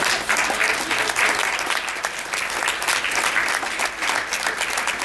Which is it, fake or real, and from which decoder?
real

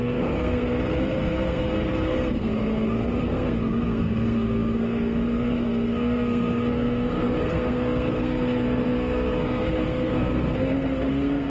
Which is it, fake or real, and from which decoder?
fake, codec, SNAC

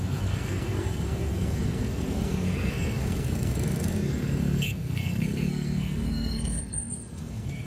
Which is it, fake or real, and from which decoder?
fake, codec, SNAC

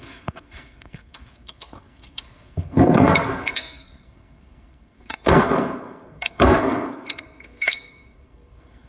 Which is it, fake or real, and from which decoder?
fake, codec, SNAC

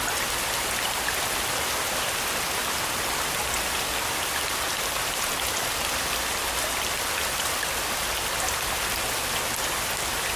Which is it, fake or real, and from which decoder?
real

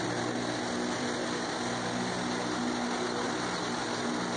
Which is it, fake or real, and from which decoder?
real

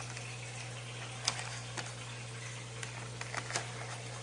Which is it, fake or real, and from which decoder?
real